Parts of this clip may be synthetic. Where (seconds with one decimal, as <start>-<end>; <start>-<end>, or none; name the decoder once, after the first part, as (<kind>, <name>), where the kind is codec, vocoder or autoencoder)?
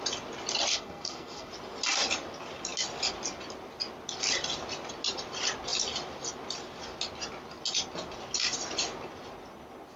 0.7-1.5 (codec, SNAC)